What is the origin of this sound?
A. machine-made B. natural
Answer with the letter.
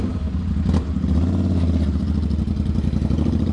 B